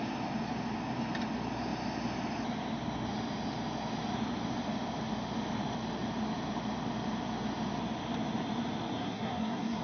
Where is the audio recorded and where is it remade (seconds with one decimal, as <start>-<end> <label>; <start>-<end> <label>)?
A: 0.0-8.9 recorded; 8.9-9.8 remade

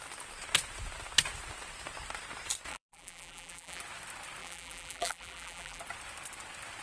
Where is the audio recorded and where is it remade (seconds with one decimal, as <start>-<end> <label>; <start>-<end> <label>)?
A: 0.0-2.7 recorded; 2.7-3.8 remade; 3.8-4.4 recorded; 4.4-5.8 remade; 5.8-6.8 recorded

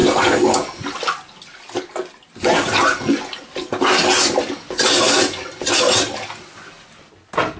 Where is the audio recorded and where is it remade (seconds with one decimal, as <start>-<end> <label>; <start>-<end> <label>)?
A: 0.0-7.6 recorded

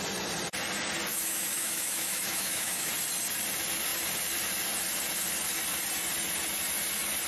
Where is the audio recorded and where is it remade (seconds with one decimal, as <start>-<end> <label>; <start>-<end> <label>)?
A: 0.0-1.1 recorded; 1.1-2.9 remade; 2.9-7.3 recorded

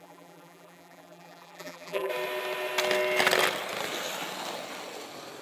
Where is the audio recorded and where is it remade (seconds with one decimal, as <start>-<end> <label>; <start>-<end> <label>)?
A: 0.0-2.1 remade; 2.1-5.4 recorded

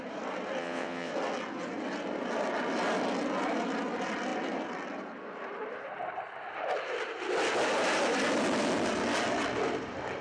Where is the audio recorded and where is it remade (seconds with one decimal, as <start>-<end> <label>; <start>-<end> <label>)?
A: 0.0-0.6 recorded; 0.6-1.1 remade; 1.1-10.2 recorded

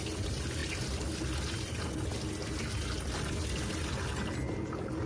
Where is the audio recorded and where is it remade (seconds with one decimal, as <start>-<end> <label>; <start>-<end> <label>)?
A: 0.0-5.1 recorded

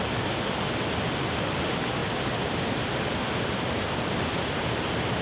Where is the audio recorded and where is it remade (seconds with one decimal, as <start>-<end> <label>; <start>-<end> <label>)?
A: 0.0-5.2 recorded